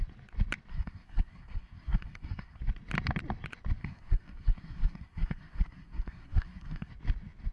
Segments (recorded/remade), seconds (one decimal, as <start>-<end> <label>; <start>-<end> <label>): 0.0-0.7 recorded; 0.7-2.6 remade; 2.6-3.8 recorded; 3.8-6.9 remade; 6.9-7.5 recorded